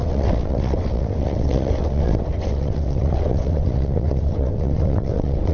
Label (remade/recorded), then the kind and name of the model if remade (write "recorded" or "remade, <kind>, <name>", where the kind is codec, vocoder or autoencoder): remade, vocoder, WaveNeXt